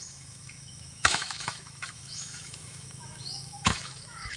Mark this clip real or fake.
fake